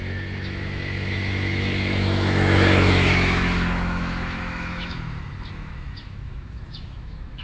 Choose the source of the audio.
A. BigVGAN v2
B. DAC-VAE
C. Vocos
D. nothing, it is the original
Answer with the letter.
B